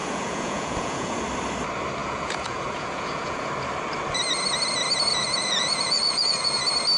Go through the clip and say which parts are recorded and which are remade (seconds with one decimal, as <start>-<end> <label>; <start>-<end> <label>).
0.0-1.2 remade; 1.2-2.0 recorded; 2.0-3.5 remade; 3.5-5.1 recorded; 5.1-6.6 remade; 6.6-7.0 recorded